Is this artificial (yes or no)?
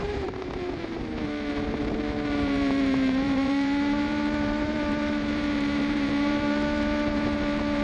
yes